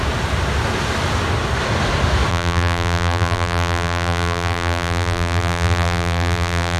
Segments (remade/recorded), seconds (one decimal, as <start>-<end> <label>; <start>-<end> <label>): 0.0-2.3 recorded; 2.3-6.8 remade